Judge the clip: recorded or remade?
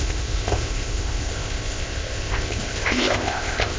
remade